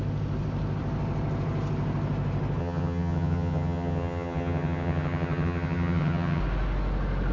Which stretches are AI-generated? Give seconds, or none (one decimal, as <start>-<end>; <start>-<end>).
2.6-6.4